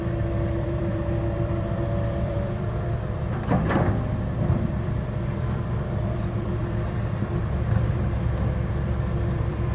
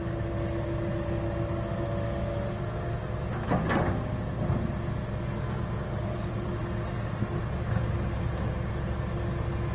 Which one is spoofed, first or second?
first